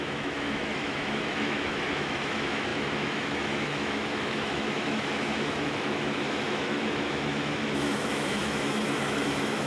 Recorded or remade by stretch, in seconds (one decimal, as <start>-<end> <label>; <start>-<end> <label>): 0.0-9.7 remade